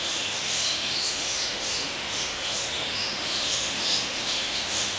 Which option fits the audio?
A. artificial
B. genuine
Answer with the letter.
A